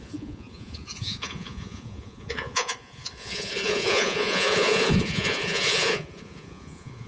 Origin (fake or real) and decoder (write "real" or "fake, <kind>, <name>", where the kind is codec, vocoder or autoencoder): fake, vocoder, Vocos